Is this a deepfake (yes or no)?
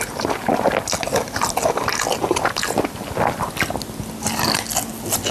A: no